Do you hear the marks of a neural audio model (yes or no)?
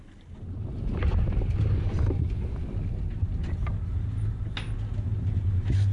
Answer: no